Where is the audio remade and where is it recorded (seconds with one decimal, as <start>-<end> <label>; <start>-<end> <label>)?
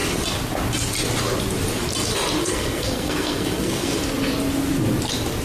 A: 0.0-2.4 recorded; 2.4-4.0 remade; 4.0-5.4 recorded